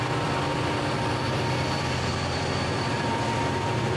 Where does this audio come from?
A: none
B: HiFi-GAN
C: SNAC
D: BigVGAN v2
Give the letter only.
D